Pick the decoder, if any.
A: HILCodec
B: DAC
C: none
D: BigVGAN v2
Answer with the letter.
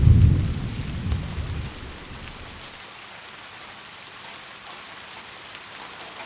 C